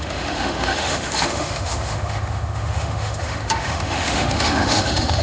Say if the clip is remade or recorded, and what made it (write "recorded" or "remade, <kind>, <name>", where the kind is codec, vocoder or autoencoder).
remade, autoencoder, DAC-VAE